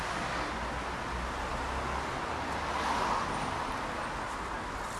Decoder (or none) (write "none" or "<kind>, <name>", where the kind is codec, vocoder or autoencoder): none